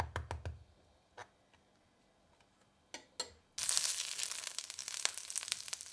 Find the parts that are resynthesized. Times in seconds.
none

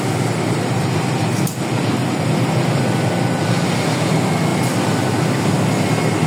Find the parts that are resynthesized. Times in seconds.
none

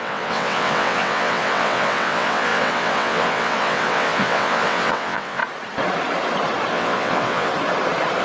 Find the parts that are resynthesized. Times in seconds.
0.0-5.4 (vocoder, WaveNeXt); 6.7-7.5

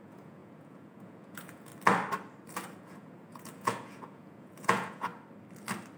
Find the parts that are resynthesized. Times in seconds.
0.0-1.7 (vocoder, Vocos); 2.8-5.1

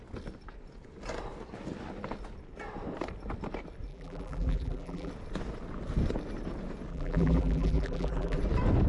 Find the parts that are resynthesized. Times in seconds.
3.9-5.1 (vocoder, BigVGAN v2); 6.9-8.4

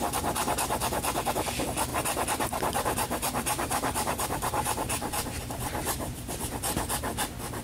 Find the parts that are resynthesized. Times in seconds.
1.9-6.5 (vocoder, BigVGAN v2)

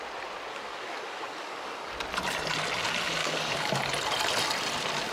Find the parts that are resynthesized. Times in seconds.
0.5-1.9 (codec, DAC); 3.2-3.8

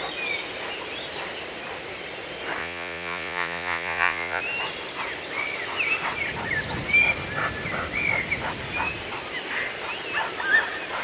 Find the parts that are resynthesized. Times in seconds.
2.6-4.4 (vocoder, Vocos)